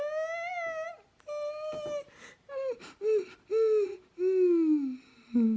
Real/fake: real